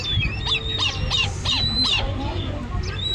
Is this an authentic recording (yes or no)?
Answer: yes